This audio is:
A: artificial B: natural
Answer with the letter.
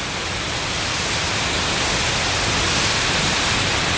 B